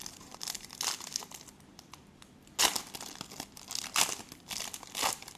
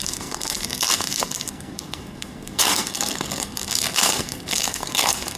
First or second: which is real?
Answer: first